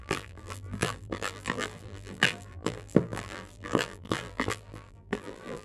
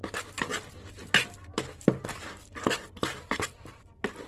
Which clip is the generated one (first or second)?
first